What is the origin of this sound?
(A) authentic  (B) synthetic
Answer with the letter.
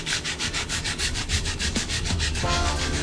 B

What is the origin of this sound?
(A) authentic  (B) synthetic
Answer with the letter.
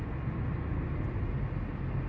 A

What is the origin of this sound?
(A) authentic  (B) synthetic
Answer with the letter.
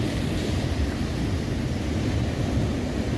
A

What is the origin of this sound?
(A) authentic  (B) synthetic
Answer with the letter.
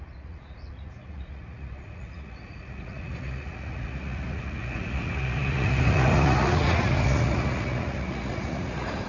B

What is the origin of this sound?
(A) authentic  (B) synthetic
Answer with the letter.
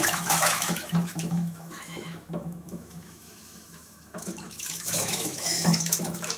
B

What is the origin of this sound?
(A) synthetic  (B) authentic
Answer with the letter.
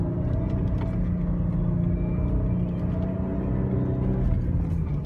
B